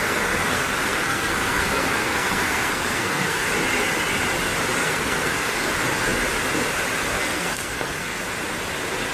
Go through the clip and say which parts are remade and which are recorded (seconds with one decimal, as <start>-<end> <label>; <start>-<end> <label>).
0.0-3.5 remade; 3.5-4.8 recorded; 4.8-5.7 remade; 5.7-7.1 recorded; 7.1-8.2 remade; 8.2-9.1 recorded